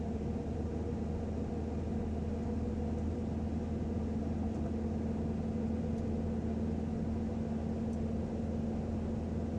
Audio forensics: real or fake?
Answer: real